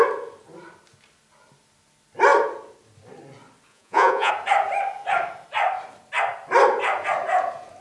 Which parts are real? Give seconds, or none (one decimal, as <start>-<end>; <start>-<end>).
0.0-3.7; 4.3-7.8